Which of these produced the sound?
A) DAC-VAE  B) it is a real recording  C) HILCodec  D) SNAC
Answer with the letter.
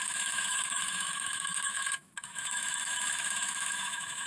A